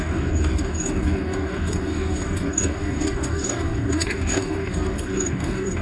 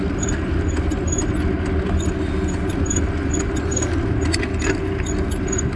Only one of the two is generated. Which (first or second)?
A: first